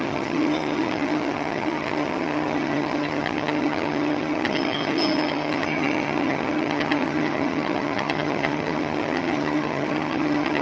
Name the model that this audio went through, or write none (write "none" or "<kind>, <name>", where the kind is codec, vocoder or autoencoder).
vocoder, HiFi-GAN